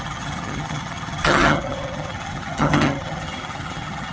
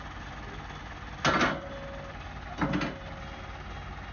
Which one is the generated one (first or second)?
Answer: first